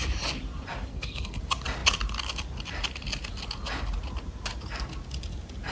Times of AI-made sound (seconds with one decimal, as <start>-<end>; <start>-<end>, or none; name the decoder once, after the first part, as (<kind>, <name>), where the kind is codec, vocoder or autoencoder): 0.9-1.4 (codec, SNAC)